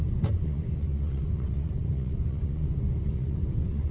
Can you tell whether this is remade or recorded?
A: remade